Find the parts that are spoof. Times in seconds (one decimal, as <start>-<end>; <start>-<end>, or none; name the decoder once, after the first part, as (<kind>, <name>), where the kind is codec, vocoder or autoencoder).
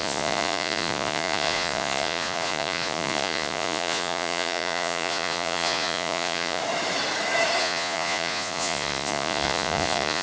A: 0.0-6.6 (vocoder, Vocos); 7.6-10.2